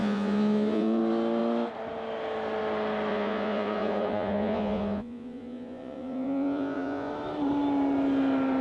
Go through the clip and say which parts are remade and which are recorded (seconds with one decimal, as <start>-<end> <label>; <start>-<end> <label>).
0.0-1.0 remade; 1.0-3.1 recorded; 3.1-7.1 remade; 7.1-8.6 recorded